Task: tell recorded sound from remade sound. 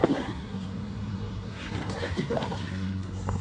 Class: remade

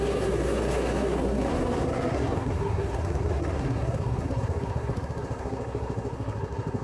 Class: remade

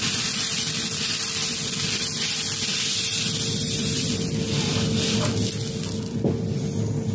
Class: recorded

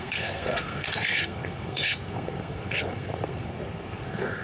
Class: remade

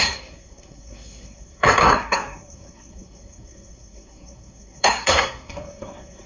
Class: remade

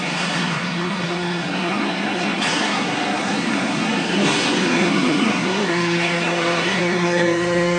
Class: remade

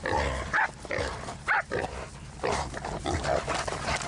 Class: recorded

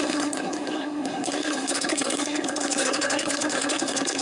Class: remade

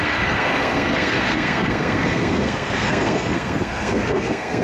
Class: remade